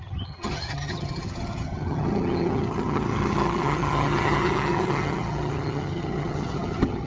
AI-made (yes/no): yes